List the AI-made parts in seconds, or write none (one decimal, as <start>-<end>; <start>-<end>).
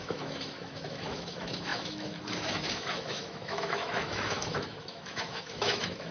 0.0-6.1